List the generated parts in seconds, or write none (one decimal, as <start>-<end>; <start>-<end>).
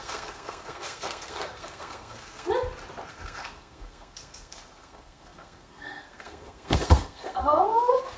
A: 0.0-2.5; 3.1-8.2